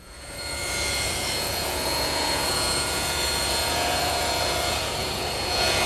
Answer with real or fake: fake